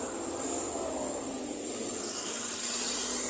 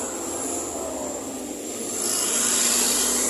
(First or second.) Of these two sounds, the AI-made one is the second